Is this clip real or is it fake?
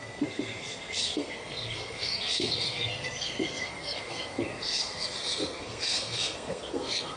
fake